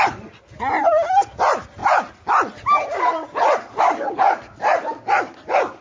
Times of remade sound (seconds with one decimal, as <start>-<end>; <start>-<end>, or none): none